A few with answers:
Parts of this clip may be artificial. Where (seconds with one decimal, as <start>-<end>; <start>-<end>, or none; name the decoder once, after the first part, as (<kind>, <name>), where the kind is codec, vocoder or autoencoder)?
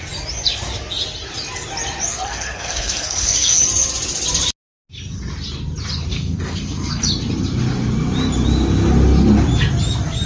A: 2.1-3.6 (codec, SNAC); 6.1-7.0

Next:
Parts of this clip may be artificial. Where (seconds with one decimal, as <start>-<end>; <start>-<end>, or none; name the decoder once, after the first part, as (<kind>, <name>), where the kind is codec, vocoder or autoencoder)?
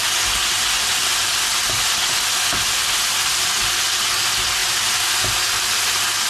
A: none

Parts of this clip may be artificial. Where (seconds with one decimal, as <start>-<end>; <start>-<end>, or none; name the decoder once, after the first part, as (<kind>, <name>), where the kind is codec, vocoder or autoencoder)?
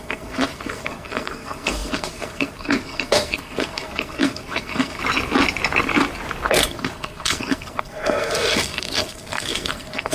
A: 0.0-5.0 (codec, SNAC); 6.5-10.1